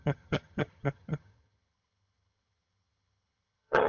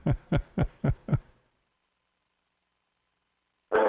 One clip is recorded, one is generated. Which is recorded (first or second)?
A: second